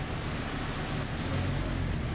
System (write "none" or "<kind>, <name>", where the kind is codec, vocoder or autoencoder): none